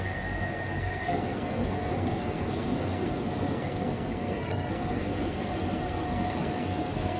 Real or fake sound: fake